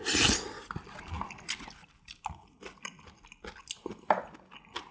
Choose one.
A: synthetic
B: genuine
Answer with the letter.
B